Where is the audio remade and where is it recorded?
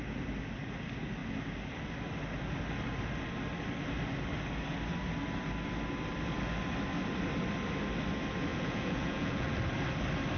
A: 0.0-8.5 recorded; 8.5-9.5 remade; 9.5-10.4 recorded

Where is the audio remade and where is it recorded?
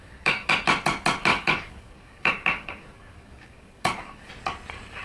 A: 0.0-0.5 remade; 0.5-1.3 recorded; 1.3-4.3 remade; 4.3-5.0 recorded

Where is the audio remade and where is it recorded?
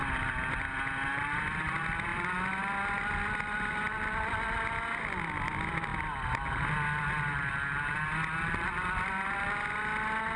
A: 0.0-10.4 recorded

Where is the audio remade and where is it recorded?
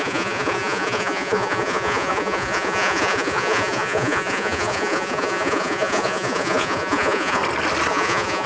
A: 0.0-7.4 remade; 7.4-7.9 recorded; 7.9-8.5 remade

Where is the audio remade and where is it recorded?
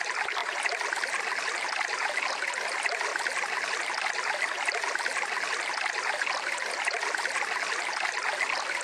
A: 0.0-2.0 recorded; 2.0-2.6 remade; 2.6-8.8 recorded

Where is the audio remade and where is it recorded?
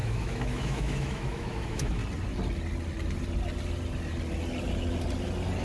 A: 0.0-2.0 remade; 2.0-5.6 recorded